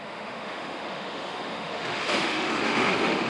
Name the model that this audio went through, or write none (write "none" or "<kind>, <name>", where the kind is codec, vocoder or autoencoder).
autoencoder, DAC-VAE